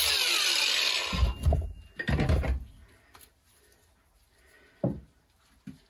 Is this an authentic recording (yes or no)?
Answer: yes